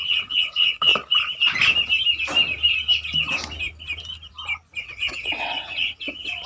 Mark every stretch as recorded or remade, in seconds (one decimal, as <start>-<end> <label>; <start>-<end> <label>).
0.0-0.9 remade; 0.9-4.8 recorded; 4.8-6.5 remade